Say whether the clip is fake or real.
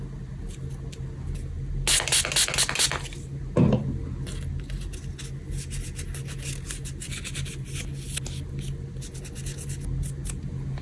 real